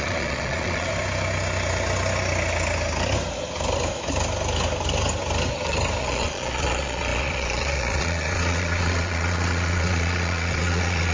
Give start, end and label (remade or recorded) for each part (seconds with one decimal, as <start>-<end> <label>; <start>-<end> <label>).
0.0-0.9 remade; 0.9-6.0 recorded; 6.0-11.1 remade